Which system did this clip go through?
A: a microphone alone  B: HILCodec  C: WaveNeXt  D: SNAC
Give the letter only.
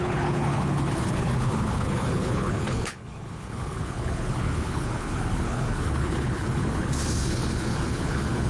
B